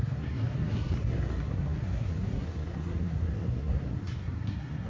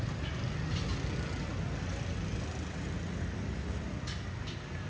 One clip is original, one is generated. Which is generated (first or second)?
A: first